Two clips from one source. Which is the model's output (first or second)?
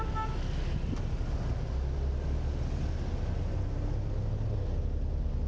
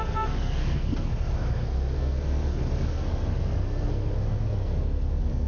second